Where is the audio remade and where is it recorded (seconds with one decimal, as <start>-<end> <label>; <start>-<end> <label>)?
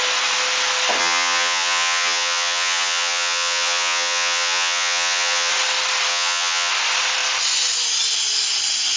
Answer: 0.0-1.0 recorded; 1.0-5.5 remade; 5.5-6.1 recorded; 6.1-6.7 remade; 6.7-9.0 recorded